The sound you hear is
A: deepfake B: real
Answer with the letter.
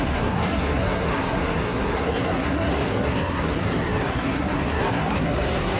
A